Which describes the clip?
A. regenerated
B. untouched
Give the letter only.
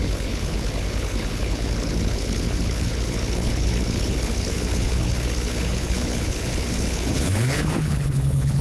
A